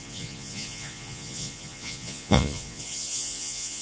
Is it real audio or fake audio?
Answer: fake